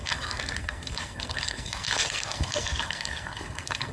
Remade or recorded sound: remade